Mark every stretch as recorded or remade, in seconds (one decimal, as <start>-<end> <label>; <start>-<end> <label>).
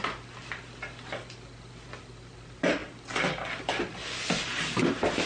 0.0-5.3 recorded